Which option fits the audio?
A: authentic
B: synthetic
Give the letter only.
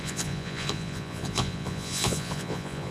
B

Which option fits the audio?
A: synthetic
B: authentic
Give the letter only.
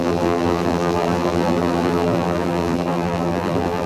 A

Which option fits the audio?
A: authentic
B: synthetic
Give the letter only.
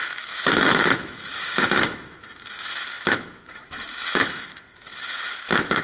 B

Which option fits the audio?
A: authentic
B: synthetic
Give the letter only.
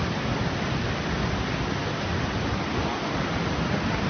A